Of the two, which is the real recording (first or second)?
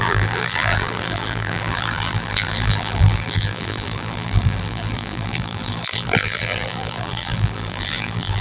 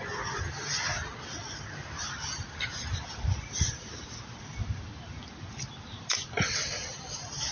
second